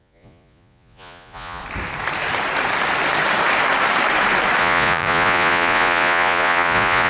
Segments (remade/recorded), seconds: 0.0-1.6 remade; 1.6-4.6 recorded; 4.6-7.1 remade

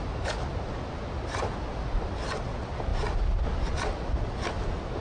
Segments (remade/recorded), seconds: 0.0-5.0 recorded

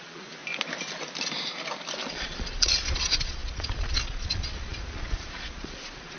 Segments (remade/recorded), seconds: 0.0-0.4 remade; 0.4-2.1 recorded; 2.1-6.2 remade

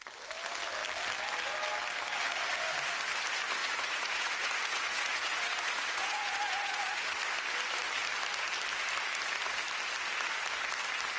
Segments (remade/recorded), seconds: 0.0-3.6 recorded; 3.6-7.2 remade; 7.2-11.2 recorded

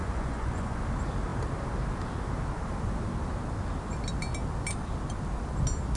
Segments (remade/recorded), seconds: 0.0-0.8 remade; 0.8-6.0 recorded

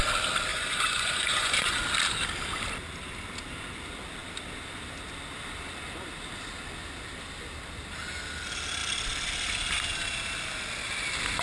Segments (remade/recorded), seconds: 0.0-0.5 recorded; 0.5-1.8 remade; 1.8-11.4 recorded

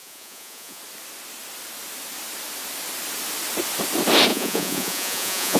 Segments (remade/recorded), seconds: 0.0-0.8 remade; 0.8-4.3 recorded; 4.3-5.6 remade